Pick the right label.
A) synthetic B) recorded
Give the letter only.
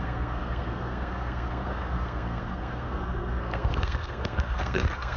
A